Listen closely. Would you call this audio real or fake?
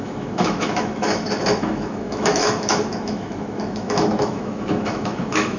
fake